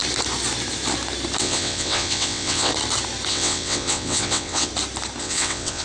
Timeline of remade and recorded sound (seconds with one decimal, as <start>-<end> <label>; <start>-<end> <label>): 0.0-1.4 recorded; 1.4-2.7 remade; 2.7-3.3 recorded; 3.3-4.7 remade; 4.7-5.2 recorded; 5.2-5.8 remade